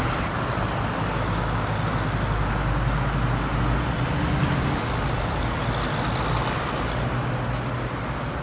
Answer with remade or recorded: recorded